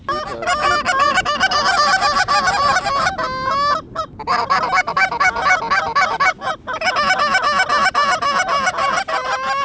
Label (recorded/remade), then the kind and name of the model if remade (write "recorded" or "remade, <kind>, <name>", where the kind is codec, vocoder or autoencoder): recorded